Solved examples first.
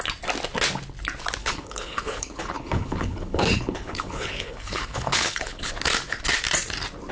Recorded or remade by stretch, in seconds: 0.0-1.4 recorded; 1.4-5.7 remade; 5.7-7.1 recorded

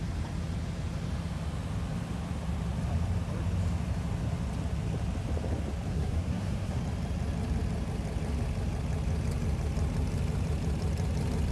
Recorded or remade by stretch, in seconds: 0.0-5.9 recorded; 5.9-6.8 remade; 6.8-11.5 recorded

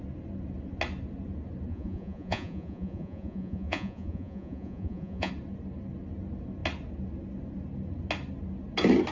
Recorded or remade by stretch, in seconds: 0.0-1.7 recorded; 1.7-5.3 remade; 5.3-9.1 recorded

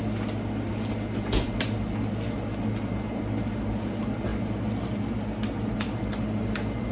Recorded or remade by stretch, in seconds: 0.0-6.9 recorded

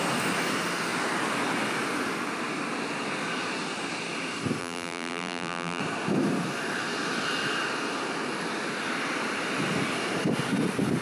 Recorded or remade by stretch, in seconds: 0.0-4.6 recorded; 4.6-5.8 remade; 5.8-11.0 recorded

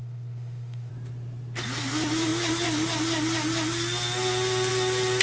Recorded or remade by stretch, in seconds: 0.0-0.9 remade; 0.9-5.2 recorded